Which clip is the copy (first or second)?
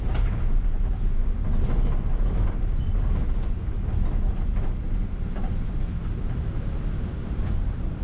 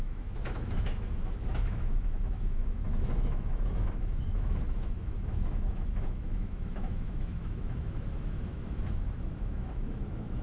second